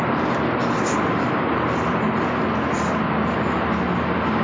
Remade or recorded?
recorded